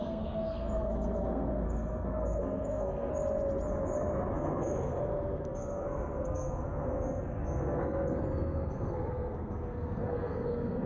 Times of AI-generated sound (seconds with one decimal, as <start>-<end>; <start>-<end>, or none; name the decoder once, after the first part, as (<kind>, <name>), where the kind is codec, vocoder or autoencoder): 0.0-3.1 (codec, SNAC); 4.3-10.9